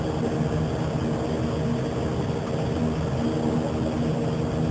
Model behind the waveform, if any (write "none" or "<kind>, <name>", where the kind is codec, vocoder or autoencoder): none